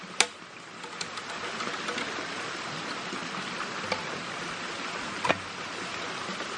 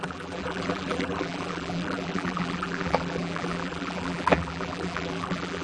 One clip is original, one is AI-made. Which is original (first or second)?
first